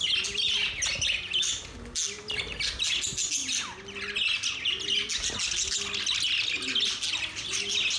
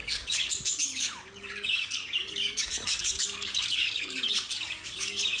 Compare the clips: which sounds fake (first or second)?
second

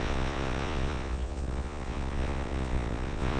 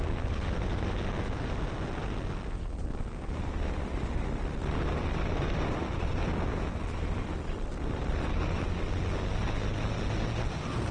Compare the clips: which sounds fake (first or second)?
first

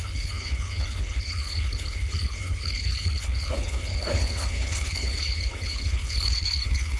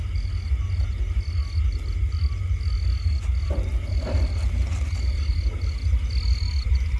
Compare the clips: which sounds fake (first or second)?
first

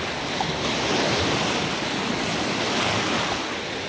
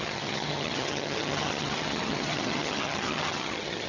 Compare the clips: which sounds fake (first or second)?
second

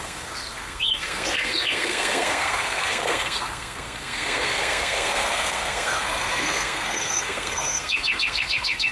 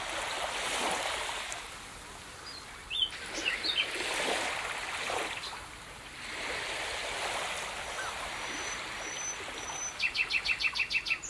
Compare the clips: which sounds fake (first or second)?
first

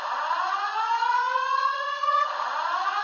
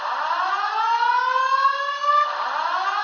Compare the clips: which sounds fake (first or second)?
first